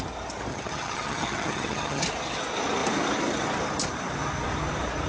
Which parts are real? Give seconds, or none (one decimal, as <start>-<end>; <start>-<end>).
0.0-0.5; 2.0-5.1